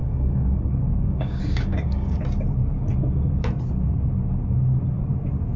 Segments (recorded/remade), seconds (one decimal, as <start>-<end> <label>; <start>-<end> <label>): 0.0-2.2 remade; 2.2-5.6 recorded